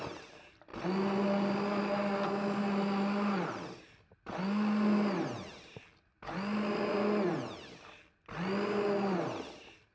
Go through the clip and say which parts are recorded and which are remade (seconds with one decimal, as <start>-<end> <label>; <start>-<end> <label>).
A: 0.0-9.9 recorded